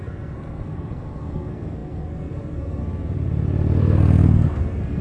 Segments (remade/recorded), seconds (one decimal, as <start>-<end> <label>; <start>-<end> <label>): 0.0-2.8 remade; 2.8-3.8 recorded; 3.8-5.0 remade